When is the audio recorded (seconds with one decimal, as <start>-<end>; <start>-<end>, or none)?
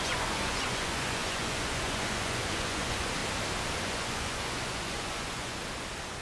3.2-3.8; 5.6-6.2